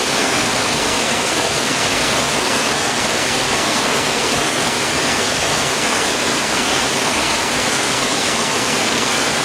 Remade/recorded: remade